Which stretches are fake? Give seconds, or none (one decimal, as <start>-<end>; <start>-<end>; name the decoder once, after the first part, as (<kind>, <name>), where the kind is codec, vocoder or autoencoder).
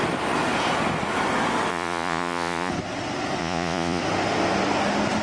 1.7-2.7 (vocoder, Vocos); 3.4-4.0